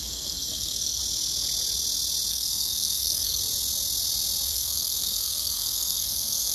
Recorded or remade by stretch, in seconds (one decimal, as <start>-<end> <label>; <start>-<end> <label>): 0.0-1.0 remade; 1.0-2.3 recorded; 2.3-3.4 remade; 3.4-4.5 recorded; 4.5-6.5 remade